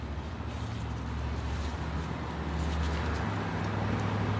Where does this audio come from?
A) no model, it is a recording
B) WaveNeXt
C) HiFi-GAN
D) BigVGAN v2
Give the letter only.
A